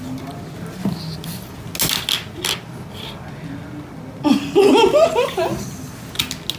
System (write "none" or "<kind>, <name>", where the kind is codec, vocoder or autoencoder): none